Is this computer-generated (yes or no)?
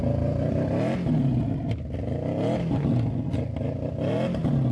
no